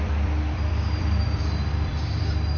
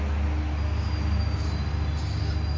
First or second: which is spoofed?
first